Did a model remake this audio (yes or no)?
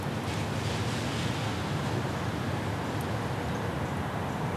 no